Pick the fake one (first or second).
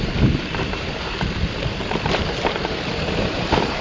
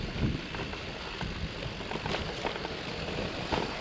first